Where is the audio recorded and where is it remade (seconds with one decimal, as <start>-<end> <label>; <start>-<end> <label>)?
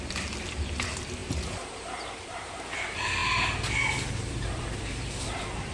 0.0-1.2 recorded; 1.2-2.5 remade; 2.5-5.7 recorded